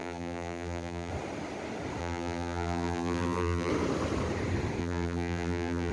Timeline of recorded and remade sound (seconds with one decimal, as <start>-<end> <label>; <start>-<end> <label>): 0.0-1.1 remade; 1.1-2.0 recorded; 2.0-3.7 remade; 3.7-4.8 recorded; 4.8-5.9 remade